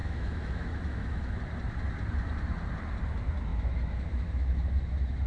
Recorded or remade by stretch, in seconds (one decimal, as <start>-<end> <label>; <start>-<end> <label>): 0.0-1.4 remade; 1.4-3.5 recorded; 3.5-5.3 remade